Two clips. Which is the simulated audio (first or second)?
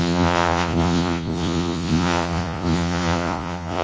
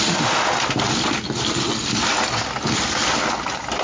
first